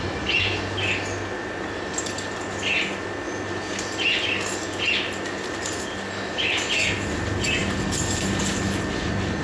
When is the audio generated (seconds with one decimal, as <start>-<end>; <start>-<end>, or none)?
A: 7.6-8.4